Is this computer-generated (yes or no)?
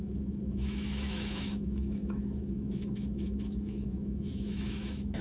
yes